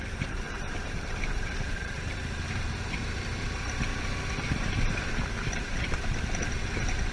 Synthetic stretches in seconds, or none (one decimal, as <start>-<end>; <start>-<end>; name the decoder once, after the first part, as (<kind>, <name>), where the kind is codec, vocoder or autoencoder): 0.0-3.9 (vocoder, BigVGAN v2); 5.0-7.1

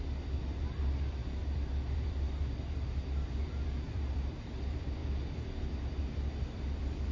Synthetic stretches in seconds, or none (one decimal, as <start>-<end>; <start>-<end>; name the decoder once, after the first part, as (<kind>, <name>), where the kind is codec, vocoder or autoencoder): 0.0-5.0 (vocoder, BigVGAN v2); 5.6-7.1

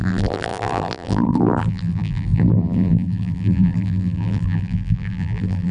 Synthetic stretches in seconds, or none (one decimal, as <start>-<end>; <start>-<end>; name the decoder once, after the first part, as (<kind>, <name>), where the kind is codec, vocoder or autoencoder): 0.0-5.7 (vocoder, BigVGAN v2)

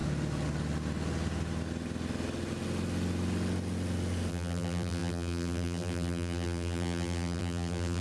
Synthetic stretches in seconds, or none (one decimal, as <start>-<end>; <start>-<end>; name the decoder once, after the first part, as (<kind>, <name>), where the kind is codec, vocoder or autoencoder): 4.3-8.0 (vocoder, BigVGAN v2)

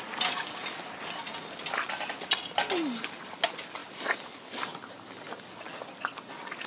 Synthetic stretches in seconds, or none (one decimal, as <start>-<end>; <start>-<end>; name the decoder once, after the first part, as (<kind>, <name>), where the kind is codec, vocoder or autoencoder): 3.8-4.3 (vocoder, BigVGAN v2)

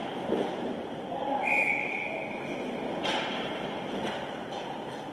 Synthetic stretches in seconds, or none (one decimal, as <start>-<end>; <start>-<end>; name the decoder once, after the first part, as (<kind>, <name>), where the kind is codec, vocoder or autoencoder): 0.0-5.1 (vocoder, BigVGAN v2)